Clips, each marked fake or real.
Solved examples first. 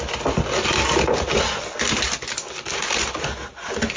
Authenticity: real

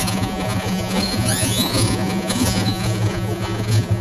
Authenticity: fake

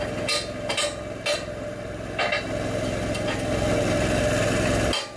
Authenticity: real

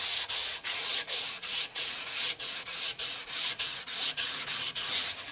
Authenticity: fake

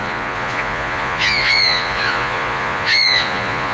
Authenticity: fake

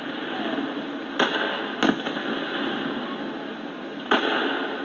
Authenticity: real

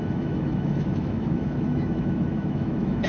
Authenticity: fake